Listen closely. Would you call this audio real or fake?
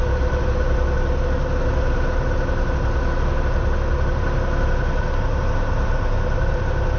real